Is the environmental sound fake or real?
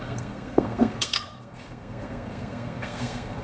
fake